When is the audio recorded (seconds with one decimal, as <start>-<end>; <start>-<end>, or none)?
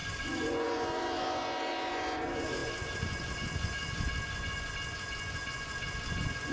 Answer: none